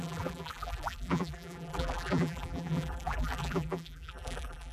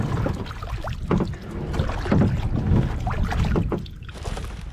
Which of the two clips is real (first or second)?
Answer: second